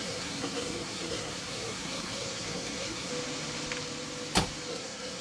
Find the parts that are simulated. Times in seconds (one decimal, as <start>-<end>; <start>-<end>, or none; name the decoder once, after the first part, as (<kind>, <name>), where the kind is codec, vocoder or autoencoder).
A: 0.0-3.1 (codec, SNAC); 4.7-5.2